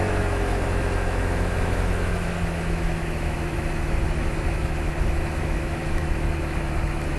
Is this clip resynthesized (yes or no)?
yes